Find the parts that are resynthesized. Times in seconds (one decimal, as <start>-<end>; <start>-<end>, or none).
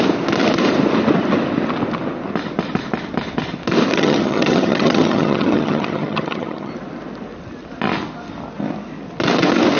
3.9-6.7